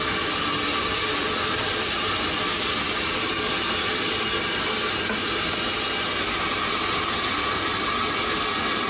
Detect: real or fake real